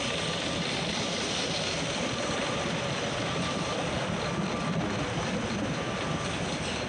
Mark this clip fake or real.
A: real